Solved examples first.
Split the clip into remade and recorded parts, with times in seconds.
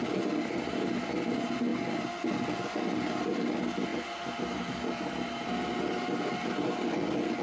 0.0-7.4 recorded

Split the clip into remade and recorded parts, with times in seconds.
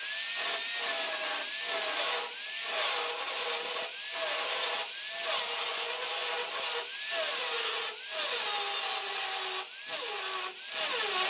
0.0-5.7 recorded; 5.7-6.3 remade; 6.3-11.3 recorded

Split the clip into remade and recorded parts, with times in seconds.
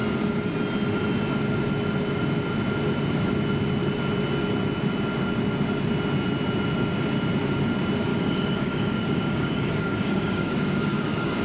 0.0-8.1 recorded; 8.1-11.4 remade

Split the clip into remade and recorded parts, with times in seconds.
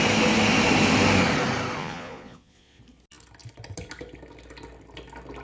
0.0-1.8 recorded; 1.8-2.8 remade; 2.8-5.4 recorded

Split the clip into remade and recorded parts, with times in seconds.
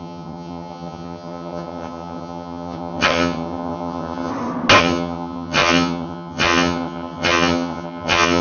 0.0-4.3 remade; 4.3-4.8 recorded; 4.8-8.4 remade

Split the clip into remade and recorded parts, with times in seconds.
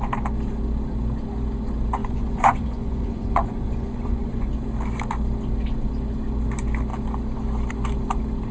0.0-2.0 recorded; 2.0-4.5 remade; 4.5-8.5 recorded